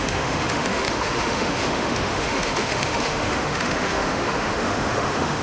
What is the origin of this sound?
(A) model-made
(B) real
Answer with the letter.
A